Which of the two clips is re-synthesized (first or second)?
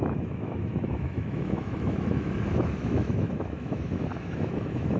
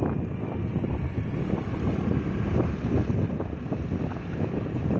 first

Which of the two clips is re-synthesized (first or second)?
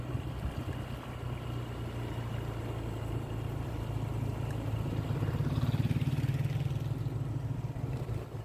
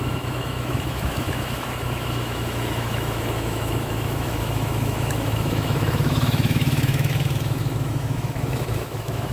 second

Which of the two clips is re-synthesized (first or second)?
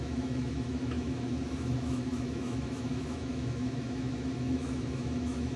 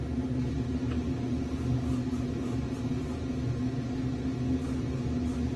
first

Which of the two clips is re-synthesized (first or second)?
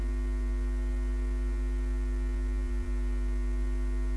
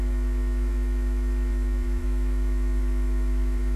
second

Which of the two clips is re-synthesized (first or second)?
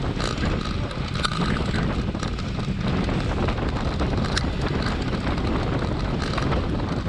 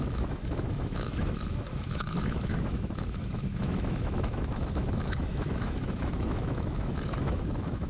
second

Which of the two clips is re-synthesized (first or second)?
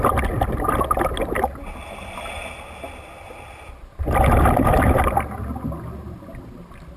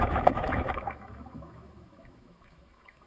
second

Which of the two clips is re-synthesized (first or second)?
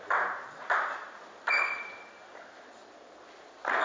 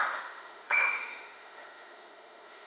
second